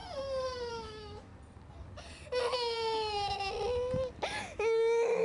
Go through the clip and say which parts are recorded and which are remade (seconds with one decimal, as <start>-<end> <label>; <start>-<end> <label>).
0.0-0.7 recorded; 0.7-1.3 remade; 1.3-4.4 recorded; 4.4-5.2 remade